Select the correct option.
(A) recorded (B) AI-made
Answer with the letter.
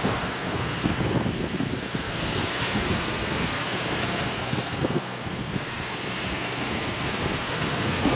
B